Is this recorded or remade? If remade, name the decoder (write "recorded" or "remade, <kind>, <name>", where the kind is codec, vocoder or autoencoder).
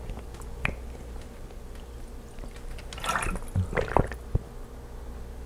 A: recorded